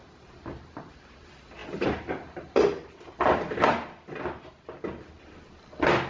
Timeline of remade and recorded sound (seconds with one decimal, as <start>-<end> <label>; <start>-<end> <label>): 0.0-6.1 recorded